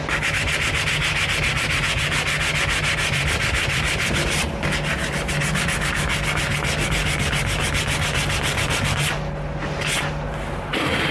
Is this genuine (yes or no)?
yes